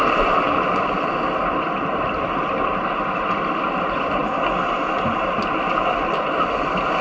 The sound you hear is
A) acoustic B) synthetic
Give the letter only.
A